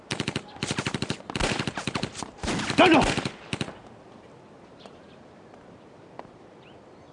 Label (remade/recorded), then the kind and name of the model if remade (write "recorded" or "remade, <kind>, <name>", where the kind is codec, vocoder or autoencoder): remade, vocoder, BigVGAN v2